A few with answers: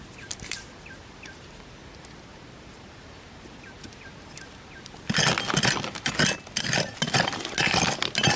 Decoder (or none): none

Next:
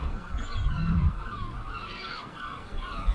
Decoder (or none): codec, SNAC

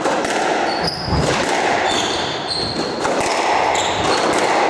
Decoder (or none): none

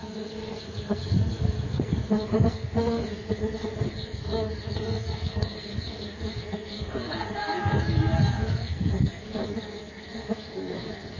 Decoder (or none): codec, SNAC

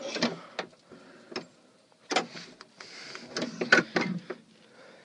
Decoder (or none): none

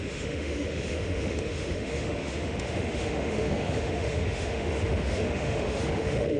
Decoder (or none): autoencoder, DAC-VAE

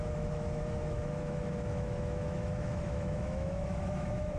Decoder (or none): autoencoder, DAC-VAE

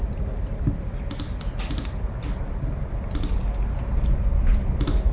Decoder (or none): vocoder, BigVGAN v2